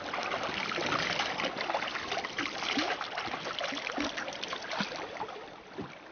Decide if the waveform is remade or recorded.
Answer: recorded